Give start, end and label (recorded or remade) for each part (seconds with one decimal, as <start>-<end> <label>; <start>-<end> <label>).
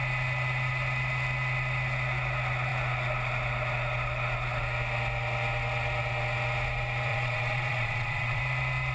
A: 0.0-7.1 recorded; 7.1-8.4 remade; 8.4-8.9 recorded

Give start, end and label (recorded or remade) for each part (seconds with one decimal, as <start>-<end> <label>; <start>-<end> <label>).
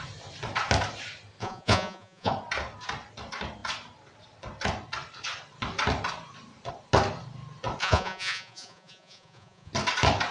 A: 0.0-1.4 recorded; 1.4-2.3 remade; 2.3-7.8 recorded; 7.8-9.7 remade; 9.7-10.3 recorded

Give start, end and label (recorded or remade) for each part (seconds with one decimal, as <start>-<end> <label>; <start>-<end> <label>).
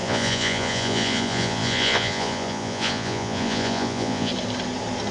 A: 0.0-4.3 remade; 4.3-5.1 recorded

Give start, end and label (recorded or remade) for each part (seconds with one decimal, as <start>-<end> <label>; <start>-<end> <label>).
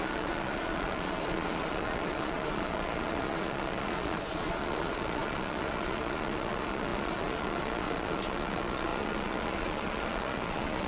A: 0.0-10.9 remade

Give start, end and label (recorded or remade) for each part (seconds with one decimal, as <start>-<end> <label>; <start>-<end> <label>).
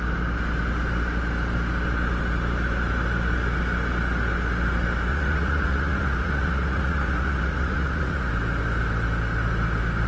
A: 0.0-5.1 recorded; 5.1-8.3 remade; 8.3-10.1 recorded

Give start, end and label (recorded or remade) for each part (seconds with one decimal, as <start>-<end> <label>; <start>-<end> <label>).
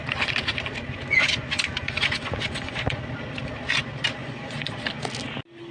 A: 0.0-1.1 recorded; 1.1-3.0 remade; 3.0-4.2 recorded; 4.2-4.8 remade; 4.8-5.7 recorded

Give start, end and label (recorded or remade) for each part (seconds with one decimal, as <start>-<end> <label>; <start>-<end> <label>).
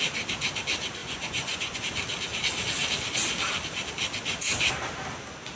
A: 0.0-1.0 recorded; 1.0-1.8 remade; 1.8-5.6 recorded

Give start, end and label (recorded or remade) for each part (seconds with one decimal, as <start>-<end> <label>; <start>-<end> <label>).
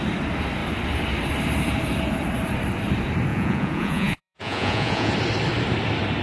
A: 0.0-3.3 recorded; 3.3-5.1 remade; 5.1-6.2 recorded